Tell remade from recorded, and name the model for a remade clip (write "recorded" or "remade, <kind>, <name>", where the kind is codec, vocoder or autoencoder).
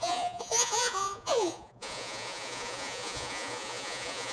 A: remade, vocoder, Vocos